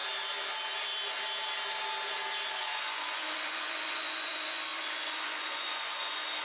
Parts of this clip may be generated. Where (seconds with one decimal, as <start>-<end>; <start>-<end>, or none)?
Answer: 2.5-6.4